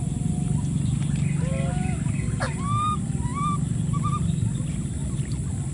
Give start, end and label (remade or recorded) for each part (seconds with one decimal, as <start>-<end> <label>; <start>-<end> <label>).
0.0-5.7 recorded